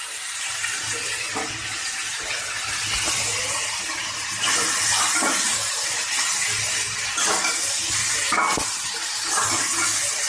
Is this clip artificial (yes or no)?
no